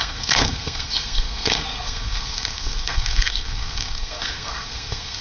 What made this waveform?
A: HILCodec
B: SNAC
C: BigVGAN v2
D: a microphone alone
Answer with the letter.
B